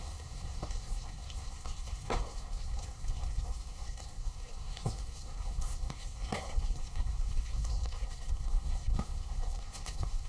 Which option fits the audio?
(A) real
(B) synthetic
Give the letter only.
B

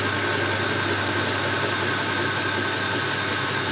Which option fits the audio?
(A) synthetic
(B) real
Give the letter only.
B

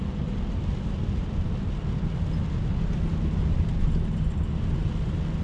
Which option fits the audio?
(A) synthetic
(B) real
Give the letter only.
B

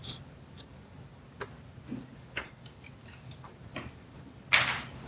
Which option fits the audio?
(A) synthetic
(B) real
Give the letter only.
B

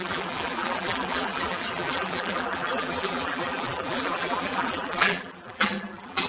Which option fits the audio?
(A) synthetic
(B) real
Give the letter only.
A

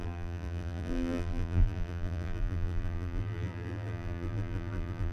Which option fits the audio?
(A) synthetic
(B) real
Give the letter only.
A